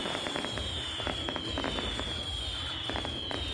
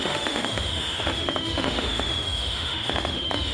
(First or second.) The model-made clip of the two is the second